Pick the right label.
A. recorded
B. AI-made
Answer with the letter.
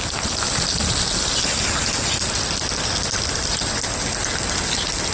A